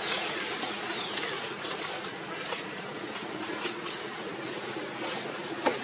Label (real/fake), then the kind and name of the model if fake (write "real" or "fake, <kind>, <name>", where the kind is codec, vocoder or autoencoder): fake, vocoder, Vocos